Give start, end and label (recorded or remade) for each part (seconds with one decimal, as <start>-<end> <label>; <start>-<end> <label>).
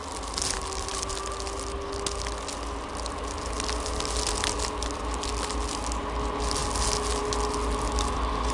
0.0-8.5 recorded